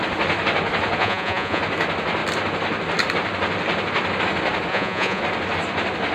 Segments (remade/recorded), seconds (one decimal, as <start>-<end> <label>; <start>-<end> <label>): 0.0-1.0 recorded; 1.0-1.6 remade; 1.6-4.7 recorded; 4.7-5.2 remade; 5.2-6.1 recorded